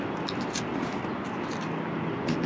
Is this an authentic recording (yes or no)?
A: yes